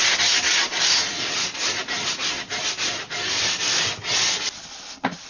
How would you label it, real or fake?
real